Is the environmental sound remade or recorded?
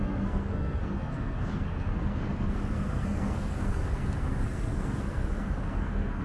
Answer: remade